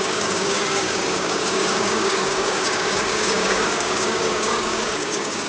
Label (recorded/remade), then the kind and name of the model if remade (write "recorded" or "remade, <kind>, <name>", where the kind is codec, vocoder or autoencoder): remade, codec, DAC